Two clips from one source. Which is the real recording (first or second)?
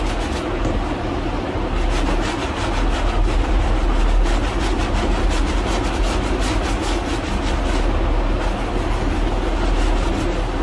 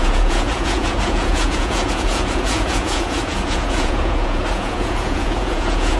first